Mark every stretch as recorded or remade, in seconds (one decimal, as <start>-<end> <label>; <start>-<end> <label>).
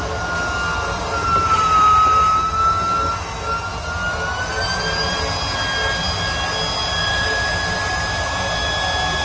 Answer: 0.0-6.8 recorded; 6.8-7.3 remade; 7.3-9.2 recorded